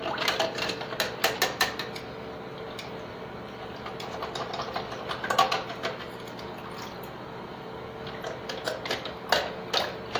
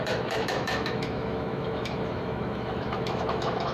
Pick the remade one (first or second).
second